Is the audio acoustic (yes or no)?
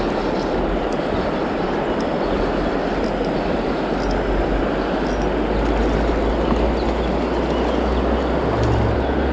yes